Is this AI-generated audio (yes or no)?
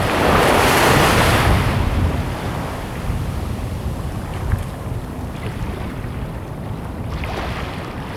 no